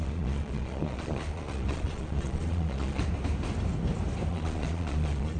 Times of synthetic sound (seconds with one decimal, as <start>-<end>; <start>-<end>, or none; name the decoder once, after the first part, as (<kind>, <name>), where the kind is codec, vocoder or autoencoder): 0.0-3.0 (vocoder, Vocos); 4.3-5.4